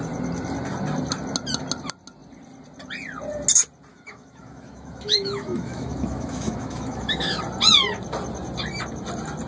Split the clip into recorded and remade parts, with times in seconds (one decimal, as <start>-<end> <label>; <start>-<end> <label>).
0.0-3.9 recorded; 3.9-7.4 remade; 7.4-9.5 recorded